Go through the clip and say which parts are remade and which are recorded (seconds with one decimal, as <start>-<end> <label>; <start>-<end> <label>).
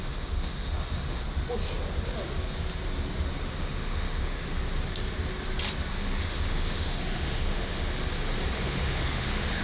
0.0-1.2 remade; 1.2-3.6 recorded; 3.6-4.6 remade; 4.6-5.9 recorded; 5.9-7.9 remade; 7.9-8.6 recorded; 8.6-9.6 remade